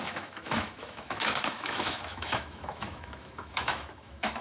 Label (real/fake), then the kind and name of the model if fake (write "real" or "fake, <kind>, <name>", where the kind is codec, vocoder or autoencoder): fake, autoencoder, DAC-VAE